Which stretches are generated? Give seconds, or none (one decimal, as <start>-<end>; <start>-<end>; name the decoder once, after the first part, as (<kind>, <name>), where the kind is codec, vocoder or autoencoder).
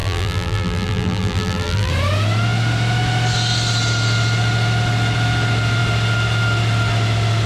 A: 0.0-1.9 (vocoder, BigVGAN v2)